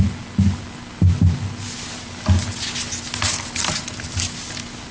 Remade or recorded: recorded